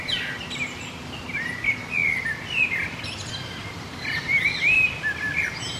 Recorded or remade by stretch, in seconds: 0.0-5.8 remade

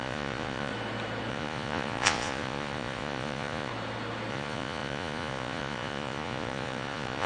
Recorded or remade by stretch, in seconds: 0.0-0.7 remade; 0.7-1.3 recorded; 1.3-3.7 remade; 3.7-4.3 recorded; 4.3-7.3 remade

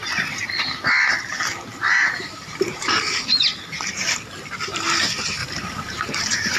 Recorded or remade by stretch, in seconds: 0.0-1.7 recorded; 1.7-2.9 remade; 2.9-5.4 recorded; 5.4-6.6 remade

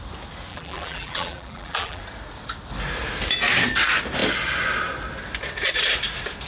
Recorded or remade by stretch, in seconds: 0.0-0.5 recorded; 0.5-2.0 remade; 2.0-6.5 recorded

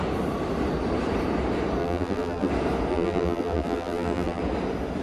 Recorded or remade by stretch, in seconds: 0.0-1.8 recorded; 1.8-2.5 remade; 2.5-2.9 recorded; 2.9-4.4 remade; 4.4-5.0 recorded

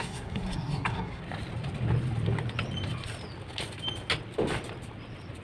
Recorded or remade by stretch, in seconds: 0.0-1.2 remade; 1.2-5.4 recorded

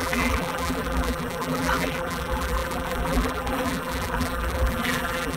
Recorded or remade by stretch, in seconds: 0.0-5.4 remade

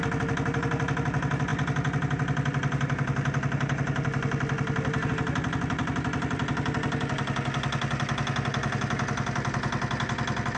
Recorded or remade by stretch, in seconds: 0.0-10.6 recorded